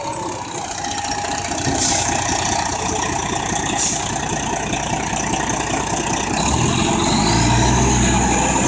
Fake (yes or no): no